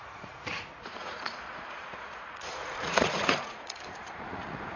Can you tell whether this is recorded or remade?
remade